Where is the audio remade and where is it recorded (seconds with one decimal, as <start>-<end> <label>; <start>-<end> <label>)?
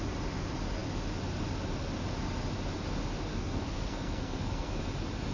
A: 0.0-3.3 recorded; 3.3-4.8 remade; 4.8-5.3 recorded